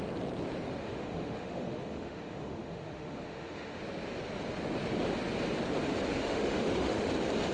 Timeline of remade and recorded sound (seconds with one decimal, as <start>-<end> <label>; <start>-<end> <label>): 0.0-0.8 recorded; 0.8-3.8 remade; 3.8-6.2 recorded; 6.2-7.1 remade; 7.1-7.5 recorded